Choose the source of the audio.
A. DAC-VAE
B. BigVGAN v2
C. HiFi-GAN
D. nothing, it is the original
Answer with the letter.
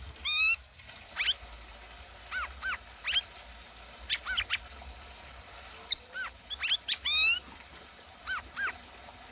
D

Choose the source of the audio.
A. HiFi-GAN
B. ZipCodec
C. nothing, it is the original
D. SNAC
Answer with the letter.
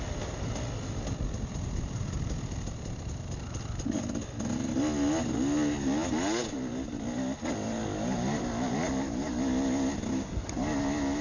C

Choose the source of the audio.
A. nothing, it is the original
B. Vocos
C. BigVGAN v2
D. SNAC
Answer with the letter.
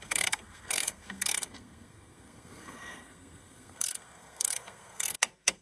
D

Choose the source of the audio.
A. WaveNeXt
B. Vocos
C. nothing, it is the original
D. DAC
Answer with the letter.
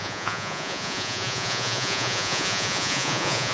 B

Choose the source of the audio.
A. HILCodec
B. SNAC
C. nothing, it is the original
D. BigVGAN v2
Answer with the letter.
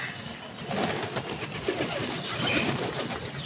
C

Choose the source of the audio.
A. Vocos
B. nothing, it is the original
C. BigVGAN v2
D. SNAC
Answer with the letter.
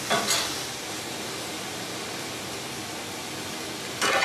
B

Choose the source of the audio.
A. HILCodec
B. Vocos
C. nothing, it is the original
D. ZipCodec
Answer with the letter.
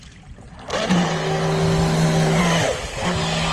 C